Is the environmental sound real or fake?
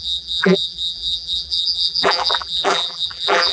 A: fake